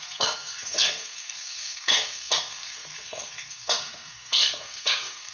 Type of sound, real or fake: fake